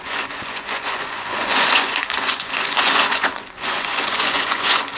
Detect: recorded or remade remade